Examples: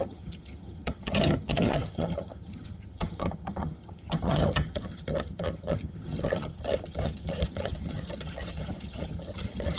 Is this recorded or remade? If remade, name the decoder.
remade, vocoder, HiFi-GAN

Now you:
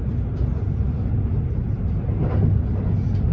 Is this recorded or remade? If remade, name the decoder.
recorded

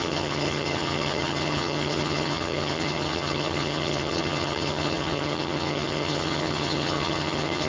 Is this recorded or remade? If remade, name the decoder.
remade, vocoder, HiFi-GAN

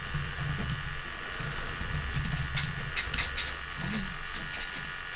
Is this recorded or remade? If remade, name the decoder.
recorded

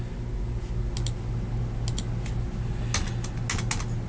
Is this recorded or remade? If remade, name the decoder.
recorded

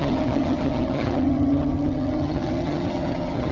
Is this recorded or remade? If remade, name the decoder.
remade, vocoder, HiFi-GAN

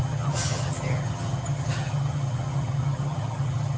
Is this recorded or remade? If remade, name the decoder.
remade, vocoder, HiFi-GAN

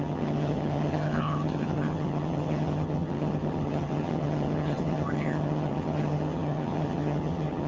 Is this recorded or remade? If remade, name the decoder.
remade, vocoder, HiFi-GAN